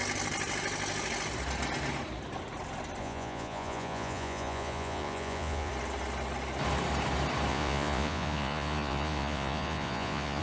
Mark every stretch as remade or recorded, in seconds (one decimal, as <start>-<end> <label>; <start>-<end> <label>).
0.0-3.0 recorded; 3.0-5.7 remade; 5.7-7.5 recorded; 7.5-10.4 remade